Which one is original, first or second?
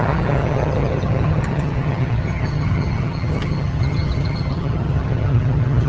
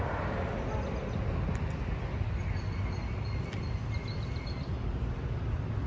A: second